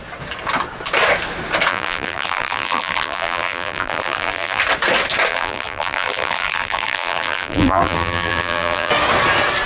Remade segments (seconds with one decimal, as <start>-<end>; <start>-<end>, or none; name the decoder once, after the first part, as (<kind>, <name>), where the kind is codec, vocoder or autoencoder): 1.7-4.6 (vocoder, BigVGAN v2); 5.3-8.9